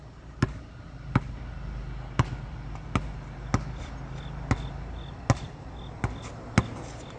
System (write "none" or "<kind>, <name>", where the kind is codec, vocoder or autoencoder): none